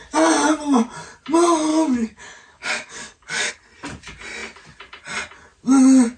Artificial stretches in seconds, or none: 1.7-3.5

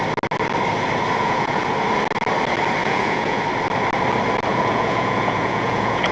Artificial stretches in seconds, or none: 1.2-1.7; 2.8-3.4; 4.5-6.1

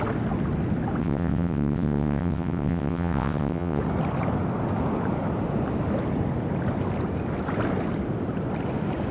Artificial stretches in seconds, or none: 1.0-3.8

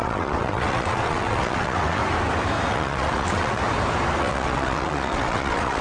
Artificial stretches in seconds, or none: 0.0-2.0; 2.7-3.6; 4.2-5.8

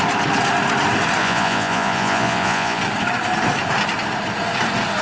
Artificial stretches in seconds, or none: 1.2-2.8

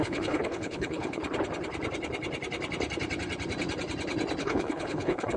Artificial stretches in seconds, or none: 0.0-1.2; 4.4-5.4